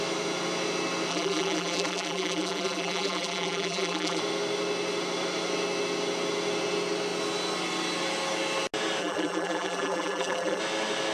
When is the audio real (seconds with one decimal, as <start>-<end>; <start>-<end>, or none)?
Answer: 0.0-1.1; 4.2-9.0; 10.6-11.1